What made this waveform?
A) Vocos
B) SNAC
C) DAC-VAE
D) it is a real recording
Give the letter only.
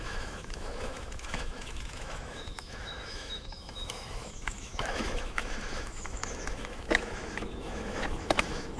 C